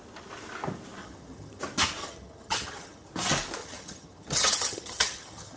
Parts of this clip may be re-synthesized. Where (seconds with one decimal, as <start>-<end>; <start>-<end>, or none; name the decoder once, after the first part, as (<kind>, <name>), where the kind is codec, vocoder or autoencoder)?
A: 1.0-1.6 (vocoder, HiFi-GAN); 2.0-3.1; 3.6-5.6